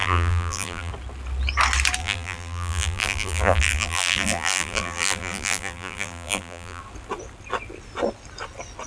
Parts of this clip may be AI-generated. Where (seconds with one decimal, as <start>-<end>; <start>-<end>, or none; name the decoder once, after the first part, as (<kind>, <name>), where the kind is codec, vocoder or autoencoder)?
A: 0.0-0.9 (vocoder, BigVGAN v2); 2.0-6.8

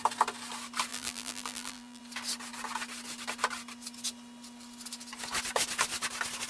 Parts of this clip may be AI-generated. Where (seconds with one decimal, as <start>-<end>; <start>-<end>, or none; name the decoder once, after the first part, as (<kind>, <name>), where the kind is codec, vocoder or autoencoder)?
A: 0.9-2.0 (vocoder, BigVGAN v2)

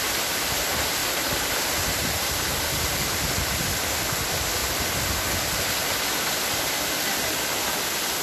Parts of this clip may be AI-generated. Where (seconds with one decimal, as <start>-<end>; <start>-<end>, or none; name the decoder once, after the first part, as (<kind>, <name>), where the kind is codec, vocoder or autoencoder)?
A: 1.0-2.9 (vocoder, BigVGAN v2)

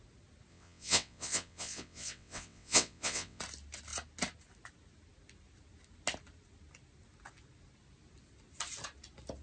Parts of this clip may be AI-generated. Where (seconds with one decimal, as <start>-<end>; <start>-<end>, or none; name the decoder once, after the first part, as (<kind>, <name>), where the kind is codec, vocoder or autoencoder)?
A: 0.5-3.4 (vocoder, WaveNeXt)

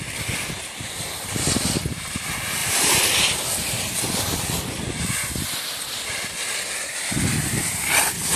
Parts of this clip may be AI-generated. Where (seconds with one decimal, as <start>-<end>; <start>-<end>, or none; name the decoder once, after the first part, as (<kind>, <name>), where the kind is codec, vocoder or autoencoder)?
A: none